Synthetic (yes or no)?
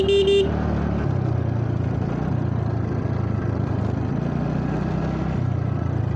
no